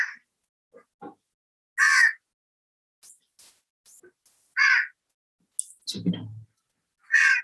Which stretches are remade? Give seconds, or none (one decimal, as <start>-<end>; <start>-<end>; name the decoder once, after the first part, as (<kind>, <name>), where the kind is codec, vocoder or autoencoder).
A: none